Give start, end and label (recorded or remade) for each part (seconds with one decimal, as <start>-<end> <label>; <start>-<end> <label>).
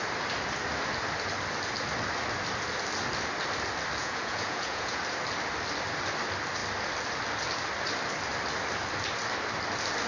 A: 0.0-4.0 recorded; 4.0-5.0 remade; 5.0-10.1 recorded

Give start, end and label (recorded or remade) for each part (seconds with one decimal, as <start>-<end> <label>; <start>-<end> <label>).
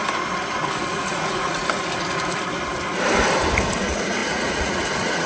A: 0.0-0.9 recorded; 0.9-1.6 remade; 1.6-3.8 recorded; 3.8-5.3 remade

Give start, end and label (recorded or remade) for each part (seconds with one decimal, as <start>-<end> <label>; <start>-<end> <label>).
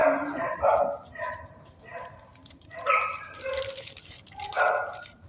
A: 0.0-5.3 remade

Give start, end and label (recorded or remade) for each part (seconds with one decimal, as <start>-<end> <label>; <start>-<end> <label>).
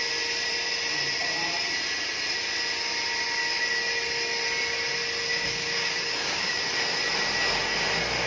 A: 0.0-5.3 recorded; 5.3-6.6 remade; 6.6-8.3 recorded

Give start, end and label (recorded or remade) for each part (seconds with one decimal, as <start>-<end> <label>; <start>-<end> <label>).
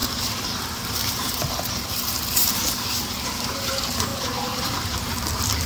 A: 0.0-4.1 remade; 4.1-4.7 recorded; 4.7-5.7 remade